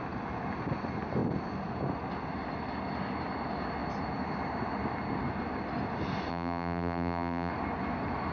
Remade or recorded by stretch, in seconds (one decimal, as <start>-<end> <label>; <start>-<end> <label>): 0.0-6.3 recorded; 6.3-7.5 remade; 7.5-8.3 recorded